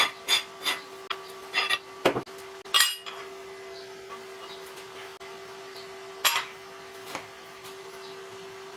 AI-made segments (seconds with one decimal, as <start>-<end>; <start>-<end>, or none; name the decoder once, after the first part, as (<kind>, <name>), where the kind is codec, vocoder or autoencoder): none